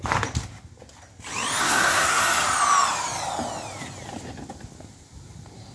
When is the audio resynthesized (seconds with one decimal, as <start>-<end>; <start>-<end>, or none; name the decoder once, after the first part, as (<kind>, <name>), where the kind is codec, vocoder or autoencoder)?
1.6-2.2 (codec, SNAC)